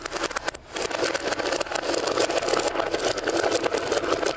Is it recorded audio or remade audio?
recorded